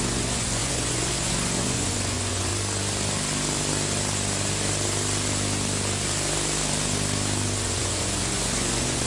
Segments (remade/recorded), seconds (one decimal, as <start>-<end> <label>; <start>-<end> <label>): 0.0-2.5 remade; 2.5-7.6 recorded; 7.6-9.1 remade